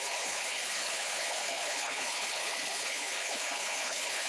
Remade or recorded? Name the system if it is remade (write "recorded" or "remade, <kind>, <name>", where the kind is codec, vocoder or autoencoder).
remade, codec, HILCodec